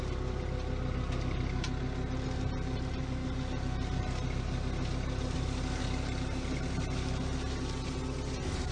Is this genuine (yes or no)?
yes